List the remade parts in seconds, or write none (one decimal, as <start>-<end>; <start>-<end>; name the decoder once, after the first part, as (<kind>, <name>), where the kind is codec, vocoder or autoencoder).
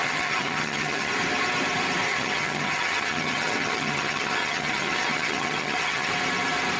0.0-1.1 (vocoder, HiFi-GAN); 2.1-6.1